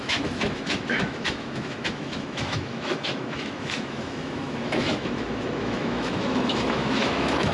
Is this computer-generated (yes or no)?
yes